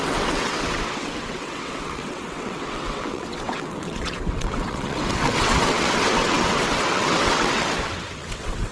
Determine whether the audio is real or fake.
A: fake